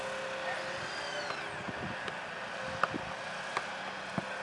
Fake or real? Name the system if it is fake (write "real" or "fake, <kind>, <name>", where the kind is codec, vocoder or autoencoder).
real